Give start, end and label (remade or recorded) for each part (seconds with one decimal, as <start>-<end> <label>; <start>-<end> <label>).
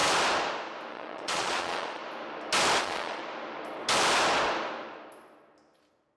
0.0-0.9 recorded; 0.9-2.0 remade; 2.0-2.8 recorded; 2.8-3.2 remade; 3.2-6.2 recorded